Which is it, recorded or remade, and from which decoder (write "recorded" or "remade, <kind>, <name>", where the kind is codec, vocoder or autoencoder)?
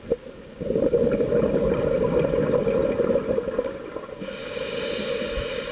recorded